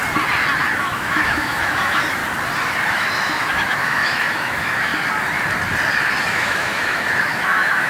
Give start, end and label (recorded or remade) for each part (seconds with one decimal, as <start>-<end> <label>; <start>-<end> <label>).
0.0-0.8 recorded; 0.8-2.2 remade; 2.2-2.9 recorded; 2.9-4.9 remade; 4.9-6.2 recorded; 6.2-7.9 remade